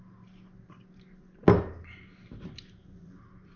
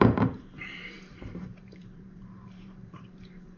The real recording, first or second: first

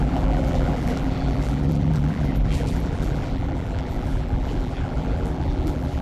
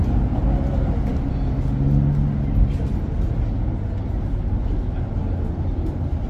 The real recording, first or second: second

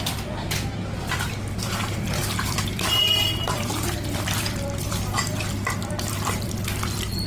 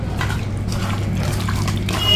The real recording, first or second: second